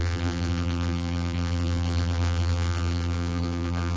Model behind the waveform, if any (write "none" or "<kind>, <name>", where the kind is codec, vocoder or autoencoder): vocoder, BigVGAN v2